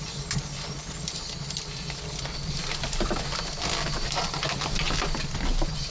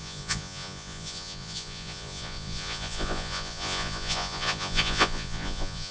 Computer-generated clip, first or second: second